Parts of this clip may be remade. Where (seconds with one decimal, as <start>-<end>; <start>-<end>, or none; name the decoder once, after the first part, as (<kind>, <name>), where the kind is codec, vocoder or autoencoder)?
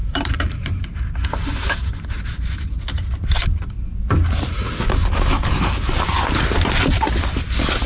0.0-0.8 (vocoder, BigVGAN v2)